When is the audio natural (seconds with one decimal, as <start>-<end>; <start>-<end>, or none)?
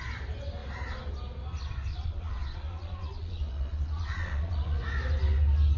0.0-1.9; 4.8-5.8